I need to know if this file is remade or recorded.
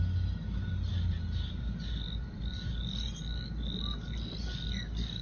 recorded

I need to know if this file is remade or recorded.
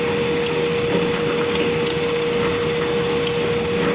recorded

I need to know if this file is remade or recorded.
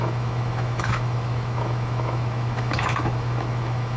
remade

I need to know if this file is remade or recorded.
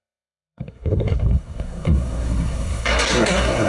remade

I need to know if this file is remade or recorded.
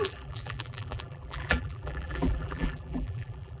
remade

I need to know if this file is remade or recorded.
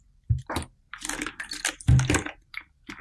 recorded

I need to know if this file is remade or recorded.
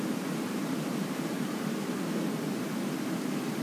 recorded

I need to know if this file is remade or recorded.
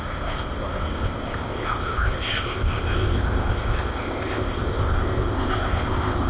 remade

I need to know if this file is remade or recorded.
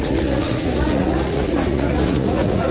remade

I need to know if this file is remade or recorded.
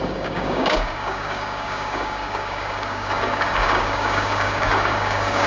remade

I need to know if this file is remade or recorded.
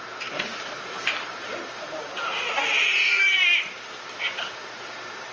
remade